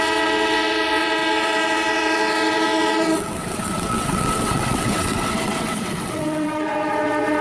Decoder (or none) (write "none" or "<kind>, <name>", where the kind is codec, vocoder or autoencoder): vocoder, WaveNeXt